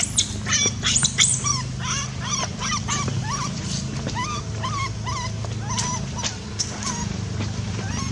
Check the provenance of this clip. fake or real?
fake